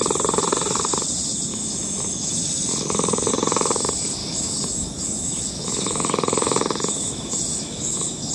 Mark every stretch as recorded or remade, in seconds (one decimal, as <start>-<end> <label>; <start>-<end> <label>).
0.0-1.5 recorded; 1.5-3.3 remade; 3.3-4.2 recorded; 4.2-8.3 remade